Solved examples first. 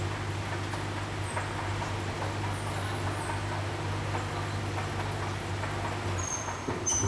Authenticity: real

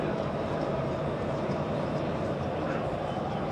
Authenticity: fake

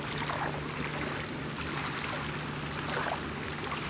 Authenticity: real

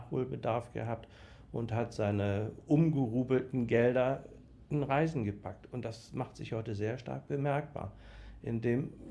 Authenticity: real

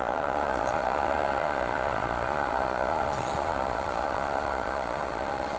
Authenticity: fake